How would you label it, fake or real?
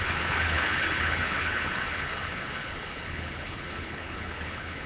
fake